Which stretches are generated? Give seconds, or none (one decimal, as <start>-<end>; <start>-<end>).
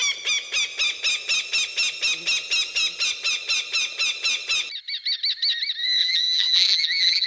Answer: 6.0-7.3